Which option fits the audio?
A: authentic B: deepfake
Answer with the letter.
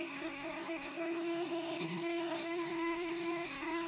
B